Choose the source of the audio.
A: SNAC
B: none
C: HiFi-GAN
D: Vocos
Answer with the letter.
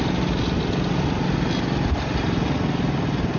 B